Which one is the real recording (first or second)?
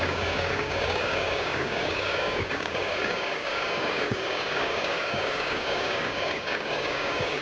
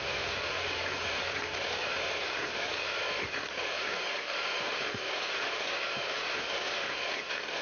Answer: second